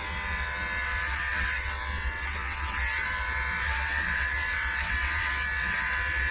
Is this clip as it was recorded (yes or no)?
no